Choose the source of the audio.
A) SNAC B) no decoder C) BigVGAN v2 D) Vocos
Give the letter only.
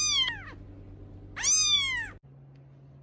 B